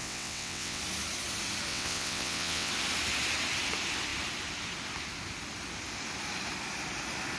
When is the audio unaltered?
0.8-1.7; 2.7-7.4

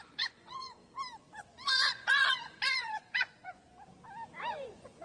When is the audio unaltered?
0.8-1.4; 3.7-4.5